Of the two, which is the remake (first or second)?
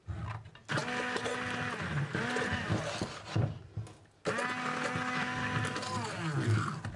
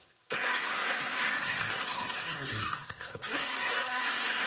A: second